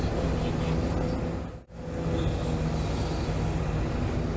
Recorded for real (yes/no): yes